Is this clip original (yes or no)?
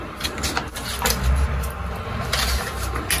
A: yes